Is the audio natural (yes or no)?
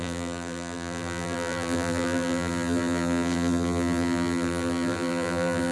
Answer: no